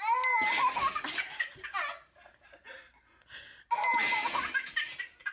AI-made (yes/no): no